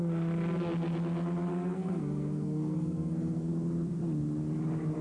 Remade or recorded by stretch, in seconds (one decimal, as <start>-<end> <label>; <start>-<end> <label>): 0.0-1.5 recorded; 1.5-3.5 remade; 3.5-5.0 recorded